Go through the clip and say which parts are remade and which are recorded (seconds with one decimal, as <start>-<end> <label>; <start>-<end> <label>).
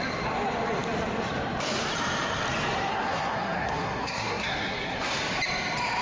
0.0-2.9 recorded; 2.9-5.2 remade; 5.2-6.0 recorded